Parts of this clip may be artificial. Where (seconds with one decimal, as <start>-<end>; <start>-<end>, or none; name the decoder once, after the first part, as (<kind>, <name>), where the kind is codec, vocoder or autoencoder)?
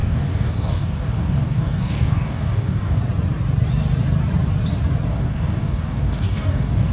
0.0-3.0 (codec, DAC); 5.1-6.9